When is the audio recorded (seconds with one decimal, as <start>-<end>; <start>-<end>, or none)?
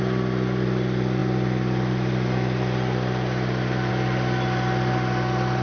0.0-5.6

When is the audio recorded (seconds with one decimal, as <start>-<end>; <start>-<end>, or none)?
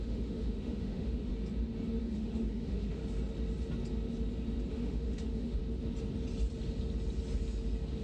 1.3-2.0; 3.0-4.7; 5.6-8.0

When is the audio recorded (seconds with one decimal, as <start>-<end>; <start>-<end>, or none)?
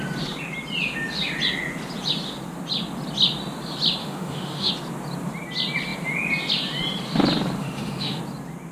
0.0-4.0; 4.7-7.6; 8.2-8.7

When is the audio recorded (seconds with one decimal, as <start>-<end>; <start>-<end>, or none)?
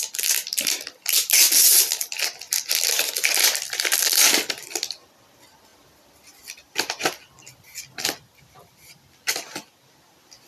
0.0-10.5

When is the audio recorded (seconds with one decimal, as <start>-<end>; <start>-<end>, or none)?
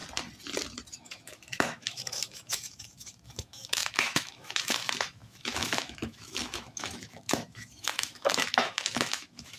0.0-0.9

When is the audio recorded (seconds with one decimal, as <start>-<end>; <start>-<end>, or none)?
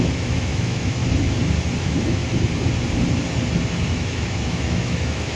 1.0-1.8; 2.2-3.9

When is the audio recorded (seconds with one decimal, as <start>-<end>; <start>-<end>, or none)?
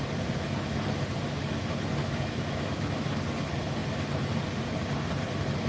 0.0-2.0; 3.1-5.7